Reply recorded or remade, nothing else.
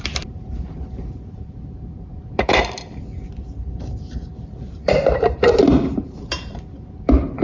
remade